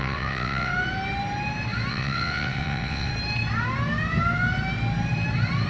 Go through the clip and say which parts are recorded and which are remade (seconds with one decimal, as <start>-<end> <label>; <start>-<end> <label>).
0.0-0.7 remade; 0.7-1.9 recorded; 1.9-3.1 remade; 3.1-5.7 recorded